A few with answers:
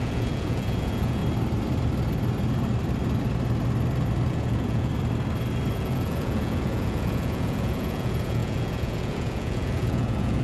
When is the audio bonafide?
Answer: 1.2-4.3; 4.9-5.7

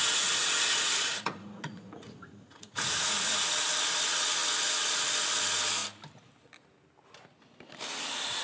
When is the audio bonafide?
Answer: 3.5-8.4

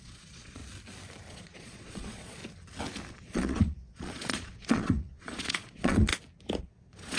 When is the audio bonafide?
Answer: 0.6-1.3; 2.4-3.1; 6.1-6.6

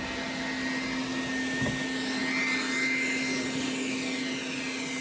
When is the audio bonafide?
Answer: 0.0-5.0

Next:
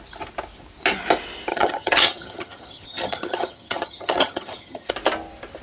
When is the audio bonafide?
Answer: 0.0-1.5; 4.9-5.6